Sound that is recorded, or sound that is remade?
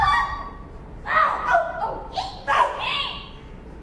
recorded